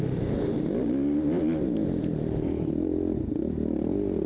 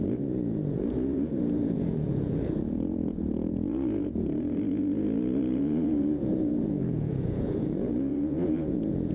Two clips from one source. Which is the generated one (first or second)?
second